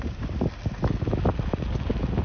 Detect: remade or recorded recorded